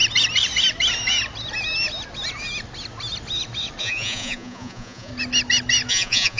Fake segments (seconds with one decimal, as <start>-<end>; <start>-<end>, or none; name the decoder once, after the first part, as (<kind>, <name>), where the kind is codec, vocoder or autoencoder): 3.8-5.1 (vocoder, Vocos); 5.9-6.4